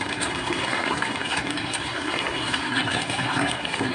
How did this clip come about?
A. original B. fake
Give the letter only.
B